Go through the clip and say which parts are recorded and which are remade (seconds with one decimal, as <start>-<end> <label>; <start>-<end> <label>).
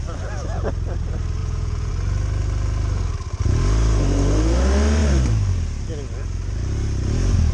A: 0.0-1.4 recorded; 1.4-1.9 remade; 1.9-7.5 recorded